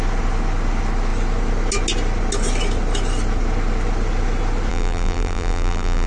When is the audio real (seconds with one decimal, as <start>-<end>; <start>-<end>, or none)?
0.0-4.7